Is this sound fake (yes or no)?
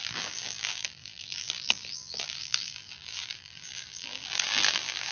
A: yes